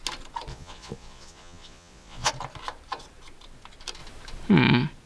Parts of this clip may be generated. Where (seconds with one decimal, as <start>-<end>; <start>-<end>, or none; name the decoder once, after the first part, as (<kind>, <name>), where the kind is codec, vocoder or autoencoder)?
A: 0.5-2.3 (vocoder, Vocos)